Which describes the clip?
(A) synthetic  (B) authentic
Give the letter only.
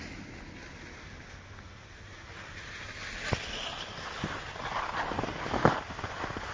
B